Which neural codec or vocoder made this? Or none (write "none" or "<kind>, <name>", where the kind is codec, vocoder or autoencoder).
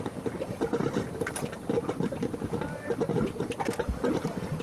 none